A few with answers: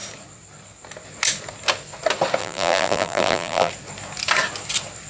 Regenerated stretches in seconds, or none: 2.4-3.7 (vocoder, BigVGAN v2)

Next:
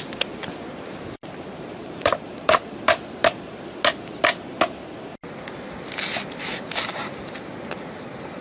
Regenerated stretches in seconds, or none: 1.8-3.4 (vocoder, BigVGAN v2)